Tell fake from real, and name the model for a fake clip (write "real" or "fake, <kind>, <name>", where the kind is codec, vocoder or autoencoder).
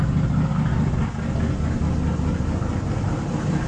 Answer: real